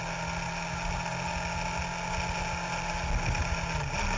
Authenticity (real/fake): real